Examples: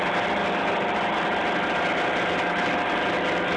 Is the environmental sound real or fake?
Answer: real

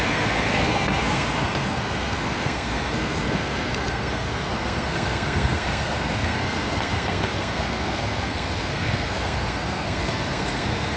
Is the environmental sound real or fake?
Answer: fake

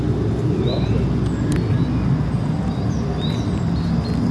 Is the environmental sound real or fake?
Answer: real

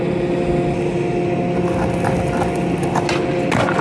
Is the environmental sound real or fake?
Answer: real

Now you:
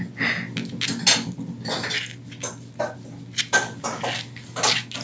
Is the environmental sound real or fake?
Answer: real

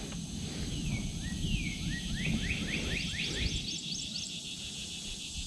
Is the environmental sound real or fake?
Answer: real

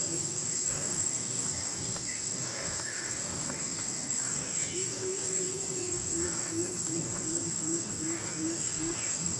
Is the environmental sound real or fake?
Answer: fake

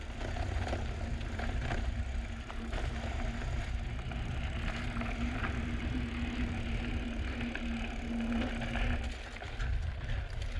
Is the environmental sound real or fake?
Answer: real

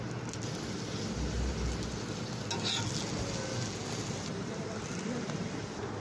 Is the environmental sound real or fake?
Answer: real